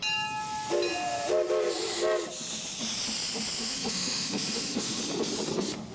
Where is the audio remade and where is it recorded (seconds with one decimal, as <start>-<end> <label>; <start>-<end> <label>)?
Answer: 0.0-3.6 recorded; 3.6-5.0 remade; 5.0-5.9 recorded

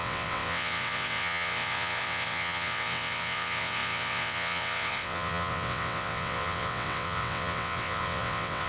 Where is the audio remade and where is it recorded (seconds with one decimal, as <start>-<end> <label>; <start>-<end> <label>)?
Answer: 0.0-8.7 remade

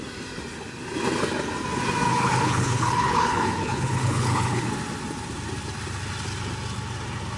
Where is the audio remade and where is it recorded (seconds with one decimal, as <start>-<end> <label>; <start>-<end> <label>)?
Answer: 0.0-2.1 recorded; 2.1-4.7 remade; 4.7-7.4 recorded